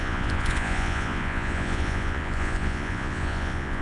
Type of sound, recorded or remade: remade